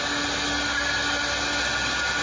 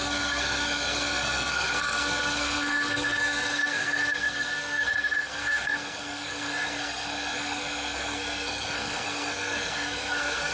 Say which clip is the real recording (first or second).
first